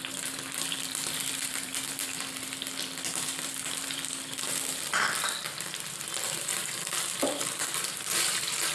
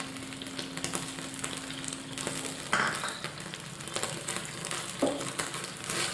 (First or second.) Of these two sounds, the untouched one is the second